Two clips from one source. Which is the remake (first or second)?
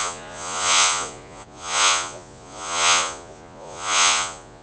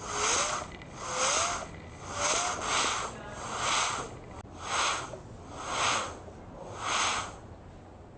first